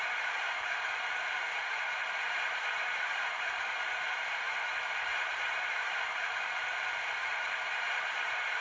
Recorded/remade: remade